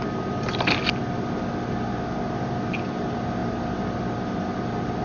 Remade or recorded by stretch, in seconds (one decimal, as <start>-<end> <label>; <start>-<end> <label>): 0.0-5.0 recorded